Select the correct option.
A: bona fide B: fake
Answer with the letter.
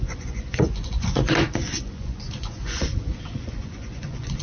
B